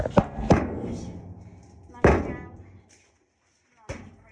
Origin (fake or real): real